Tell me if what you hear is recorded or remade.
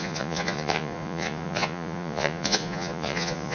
remade